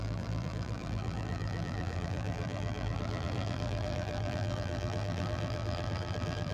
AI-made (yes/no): yes